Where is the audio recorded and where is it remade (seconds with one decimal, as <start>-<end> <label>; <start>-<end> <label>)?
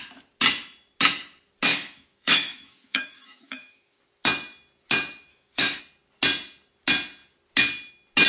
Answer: 0.0-1.7 recorded; 1.7-4.0 remade; 4.0-5.3 recorded; 5.3-5.8 remade; 5.8-8.3 recorded